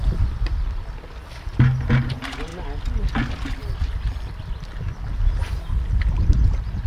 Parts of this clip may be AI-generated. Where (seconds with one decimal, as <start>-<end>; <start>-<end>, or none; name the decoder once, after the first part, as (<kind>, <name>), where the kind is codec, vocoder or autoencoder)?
none